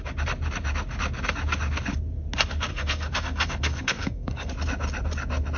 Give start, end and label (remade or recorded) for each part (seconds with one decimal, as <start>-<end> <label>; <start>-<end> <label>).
0.0-2.7 recorded; 2.7-4.5 remade; 4.5-5.6 recorded